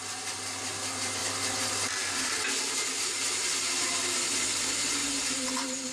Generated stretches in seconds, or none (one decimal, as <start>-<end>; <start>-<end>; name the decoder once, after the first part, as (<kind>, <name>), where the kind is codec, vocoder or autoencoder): none